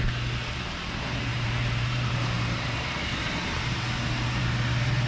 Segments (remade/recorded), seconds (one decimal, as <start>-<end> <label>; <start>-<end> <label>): 0.0-1.3 recorded; 1.3-4.4 remade; 4.4-5.1 recorded